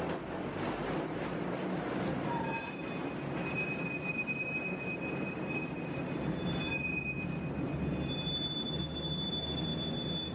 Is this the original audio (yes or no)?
yes